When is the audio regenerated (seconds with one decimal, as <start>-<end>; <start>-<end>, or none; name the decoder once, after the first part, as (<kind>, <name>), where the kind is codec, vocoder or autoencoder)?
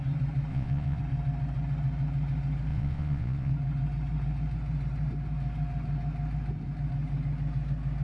0.5-1.0 (vocoder, Vocos); 2.7-3.5